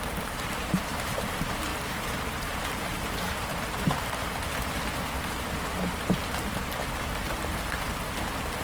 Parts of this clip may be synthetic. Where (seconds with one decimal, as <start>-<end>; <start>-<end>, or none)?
0.0-3.5; 7.8-8.6